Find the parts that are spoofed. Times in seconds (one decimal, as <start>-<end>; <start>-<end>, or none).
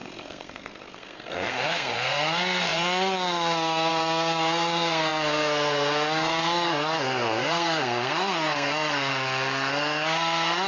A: 0.0-10.7